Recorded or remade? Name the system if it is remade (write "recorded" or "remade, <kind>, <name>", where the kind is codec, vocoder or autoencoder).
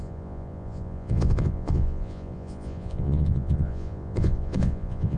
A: remade, vocoder, Vocos